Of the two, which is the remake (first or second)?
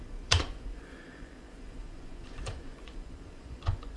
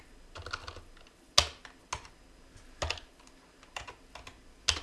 first